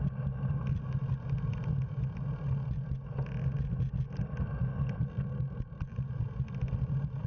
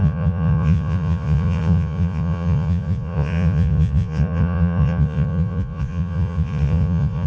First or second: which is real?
first